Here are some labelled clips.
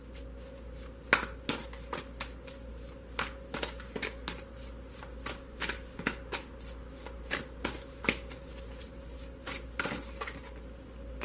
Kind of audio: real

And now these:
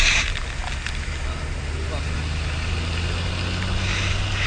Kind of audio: real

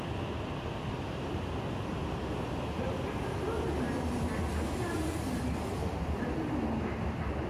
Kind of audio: real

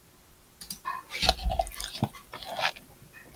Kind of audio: real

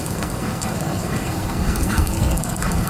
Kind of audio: fake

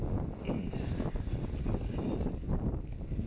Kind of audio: real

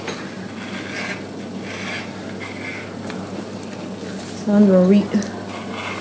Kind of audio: real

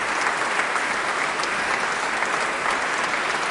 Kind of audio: real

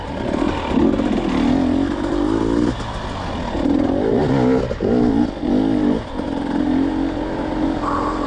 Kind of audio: real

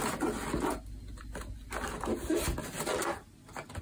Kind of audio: real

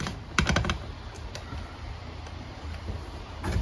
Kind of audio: real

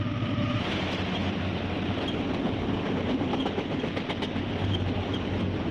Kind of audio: real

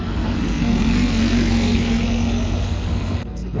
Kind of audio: fake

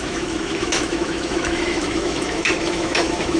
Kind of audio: fake